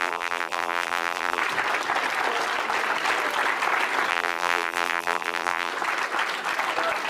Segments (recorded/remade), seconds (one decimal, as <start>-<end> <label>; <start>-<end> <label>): 0.0-1.4 remade; 1.4-4.1 recorded; 4.1-5.7 remade; 5.7-7.1 recorded